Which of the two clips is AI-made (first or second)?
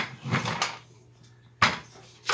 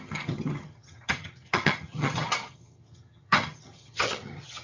second